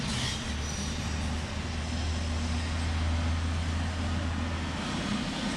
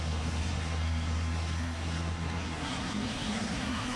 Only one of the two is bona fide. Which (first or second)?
first